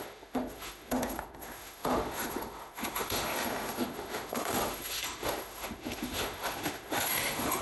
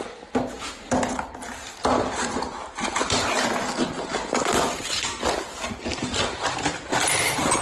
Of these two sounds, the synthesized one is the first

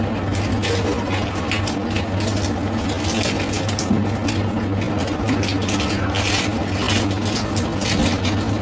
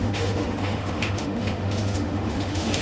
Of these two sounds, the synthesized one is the second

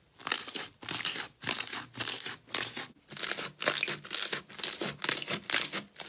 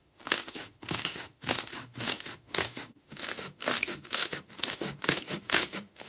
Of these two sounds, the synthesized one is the second